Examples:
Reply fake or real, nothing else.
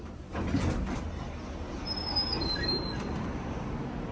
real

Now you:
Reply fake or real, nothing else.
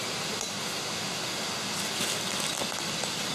real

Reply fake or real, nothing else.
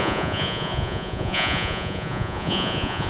fake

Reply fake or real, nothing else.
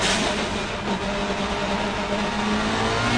real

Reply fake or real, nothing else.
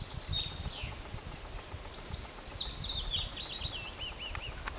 real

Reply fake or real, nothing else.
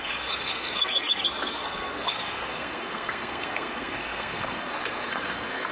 fake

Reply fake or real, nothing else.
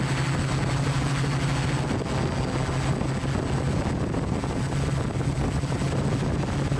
real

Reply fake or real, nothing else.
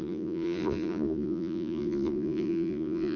fake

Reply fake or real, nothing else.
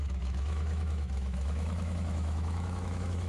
fake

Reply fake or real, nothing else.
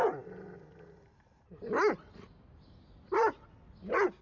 real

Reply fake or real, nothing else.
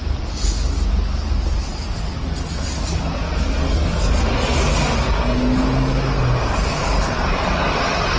real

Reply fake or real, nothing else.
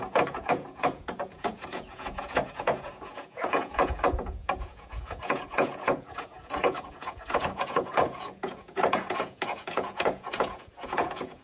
fake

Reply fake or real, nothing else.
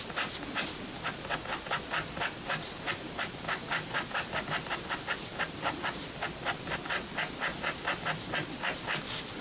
real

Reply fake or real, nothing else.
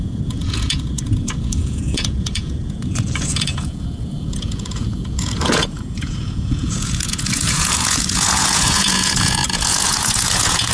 fake